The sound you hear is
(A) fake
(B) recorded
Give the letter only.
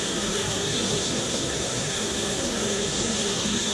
A